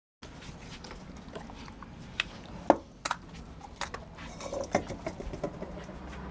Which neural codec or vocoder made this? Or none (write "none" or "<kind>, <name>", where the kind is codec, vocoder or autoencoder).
none